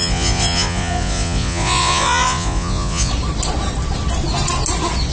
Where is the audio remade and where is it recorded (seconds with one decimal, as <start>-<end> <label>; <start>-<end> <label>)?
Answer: 0.0-3.1 remade; 3.1-5.1 recorded